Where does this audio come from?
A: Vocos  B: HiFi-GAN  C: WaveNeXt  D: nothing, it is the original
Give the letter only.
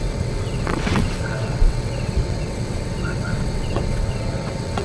C